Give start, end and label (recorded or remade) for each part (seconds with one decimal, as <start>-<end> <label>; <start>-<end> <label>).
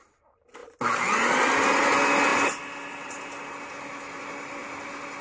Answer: 0.0-5.2 recorded